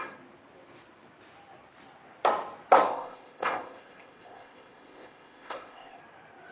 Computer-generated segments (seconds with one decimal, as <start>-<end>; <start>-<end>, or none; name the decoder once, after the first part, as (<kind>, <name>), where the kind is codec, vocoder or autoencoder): 2.9-6.0 (codec, ZipCodec)